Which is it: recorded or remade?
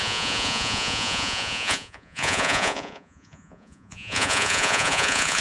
remade